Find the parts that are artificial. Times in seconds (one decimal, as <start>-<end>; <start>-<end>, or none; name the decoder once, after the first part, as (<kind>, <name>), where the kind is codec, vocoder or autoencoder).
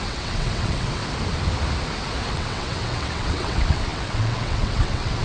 0.0-1.0 (vocoder, WaveNeXt); 2.3-5.2